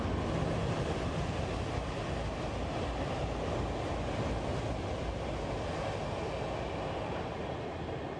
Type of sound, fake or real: real